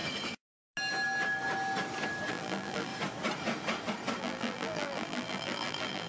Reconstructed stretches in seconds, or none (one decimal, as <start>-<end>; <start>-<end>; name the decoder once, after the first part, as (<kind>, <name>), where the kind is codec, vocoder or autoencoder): 2.3-2.9 (vocoder, BigVGAN v2); 4.2-6.1